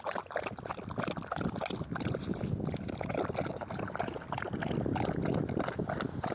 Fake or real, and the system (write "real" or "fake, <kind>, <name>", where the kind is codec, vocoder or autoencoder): real